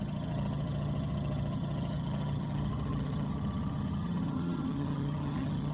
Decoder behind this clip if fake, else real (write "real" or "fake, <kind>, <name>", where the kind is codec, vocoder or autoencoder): fake, vocoder, HiFi-GAN